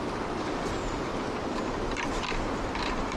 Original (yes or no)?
yes